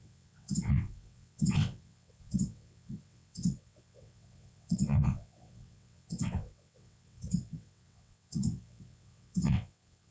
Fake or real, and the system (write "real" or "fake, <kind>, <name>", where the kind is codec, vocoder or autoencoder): fake, vocoder, WaveNeXt